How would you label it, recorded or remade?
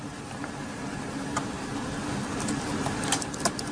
recorded